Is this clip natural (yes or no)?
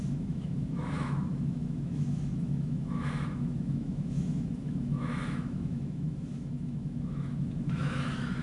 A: no